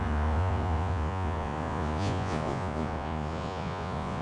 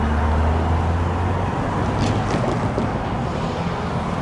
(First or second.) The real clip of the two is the second